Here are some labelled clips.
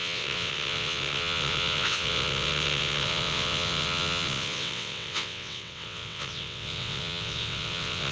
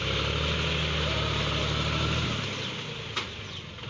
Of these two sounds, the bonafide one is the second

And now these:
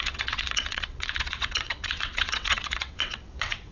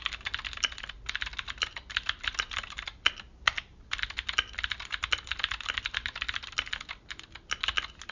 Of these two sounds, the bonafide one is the second